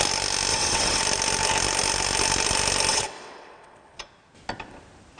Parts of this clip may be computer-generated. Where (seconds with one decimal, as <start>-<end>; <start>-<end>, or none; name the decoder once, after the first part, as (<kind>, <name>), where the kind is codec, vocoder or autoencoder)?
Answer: 0.5-1.0 (vocoder, WaveNeXt); 2.9-4.0